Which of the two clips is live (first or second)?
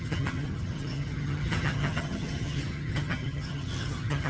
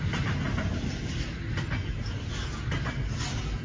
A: second